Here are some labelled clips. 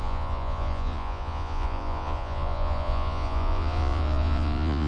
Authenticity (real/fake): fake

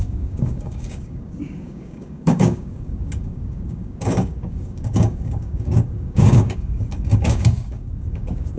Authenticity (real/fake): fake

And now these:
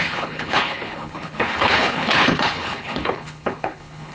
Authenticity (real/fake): fake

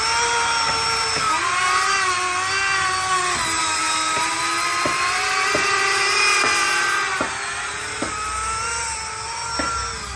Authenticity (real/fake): real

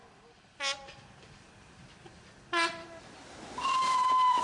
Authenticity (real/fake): real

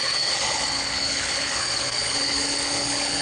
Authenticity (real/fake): fake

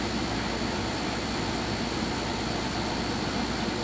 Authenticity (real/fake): fake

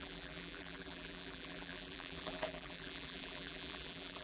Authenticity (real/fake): fake